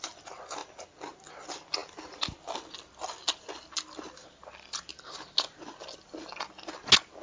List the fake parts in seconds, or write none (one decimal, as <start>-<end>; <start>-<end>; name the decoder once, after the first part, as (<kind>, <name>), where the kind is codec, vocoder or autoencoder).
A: none